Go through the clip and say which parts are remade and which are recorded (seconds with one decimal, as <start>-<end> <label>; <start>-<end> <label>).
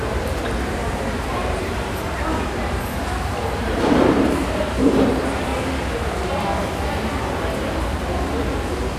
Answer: 0.0-5.5 remade; 5.5-7.2 recorded; 7.2-9.0 remade